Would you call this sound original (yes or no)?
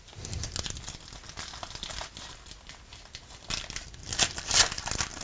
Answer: yes